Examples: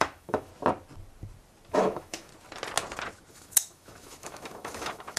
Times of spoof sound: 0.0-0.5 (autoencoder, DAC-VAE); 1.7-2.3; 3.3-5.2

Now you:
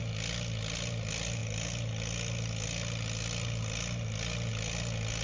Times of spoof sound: none

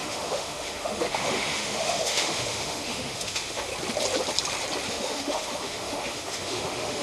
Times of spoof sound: 0.0-3.7 (autoencoder, DAC-VAE); 4.9-7.0